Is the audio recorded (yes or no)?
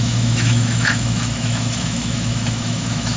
no